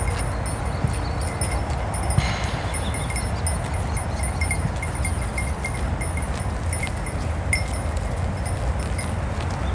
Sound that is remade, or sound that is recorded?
recorded